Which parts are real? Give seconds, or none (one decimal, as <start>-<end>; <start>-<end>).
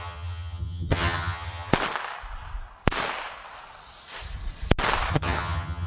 1.7-5.1